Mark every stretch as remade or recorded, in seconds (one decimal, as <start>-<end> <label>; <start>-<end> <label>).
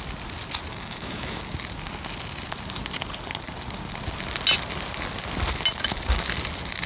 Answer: 0.0-0.7 recorded; 0.7-1.4 remade; 1.4-6.9 recorded